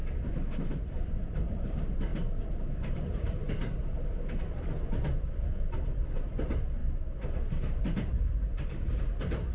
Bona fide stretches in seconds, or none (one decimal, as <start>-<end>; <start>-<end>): 0.0-1.1; 6.8-8.1